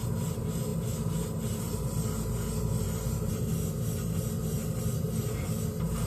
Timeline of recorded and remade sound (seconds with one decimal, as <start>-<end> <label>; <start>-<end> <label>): 0.0-6.1 recorded